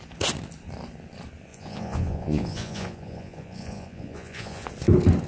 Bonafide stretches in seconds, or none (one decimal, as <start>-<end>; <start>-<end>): 0.0-1.5; 4.7-5.3